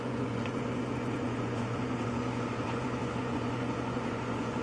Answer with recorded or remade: remade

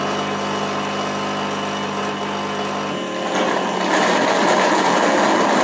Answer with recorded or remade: recorded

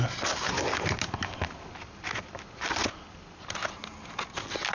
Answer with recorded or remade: recorded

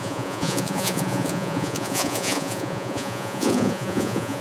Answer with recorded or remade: remade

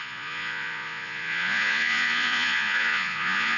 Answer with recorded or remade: remade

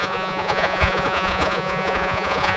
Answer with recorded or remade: remade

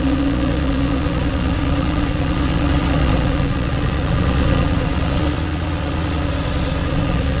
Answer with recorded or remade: remade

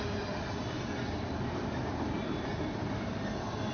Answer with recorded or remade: recorded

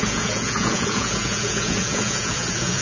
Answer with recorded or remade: remade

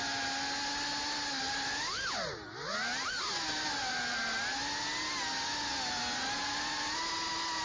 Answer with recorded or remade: recorded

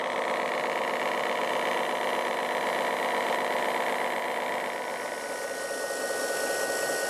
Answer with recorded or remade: recorded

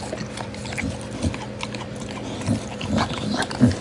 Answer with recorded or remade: recorded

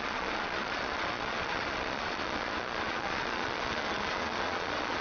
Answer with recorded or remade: remade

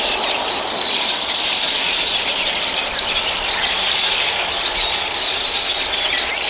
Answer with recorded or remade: recorded